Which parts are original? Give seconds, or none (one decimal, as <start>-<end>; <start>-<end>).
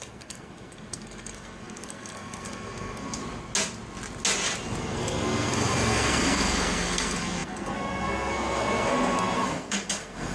3.2-4.8